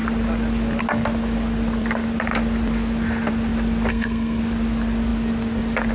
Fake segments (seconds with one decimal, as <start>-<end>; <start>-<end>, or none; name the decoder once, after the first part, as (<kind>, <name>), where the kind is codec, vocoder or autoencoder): 3.9-4.4 (codec, SNAC)